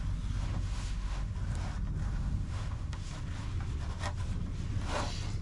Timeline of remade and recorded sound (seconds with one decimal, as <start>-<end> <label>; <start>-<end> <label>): 0.0-0.5 recorded; 0.5-1.3 remade; 1.3-2.0 recorded; 2.0-3.1 remade; 3.1-5.4 recorded